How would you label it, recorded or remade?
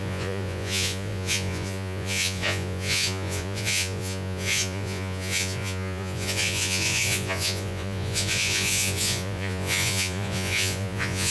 remade